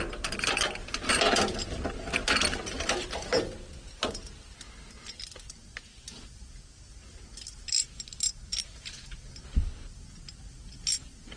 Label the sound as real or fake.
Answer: real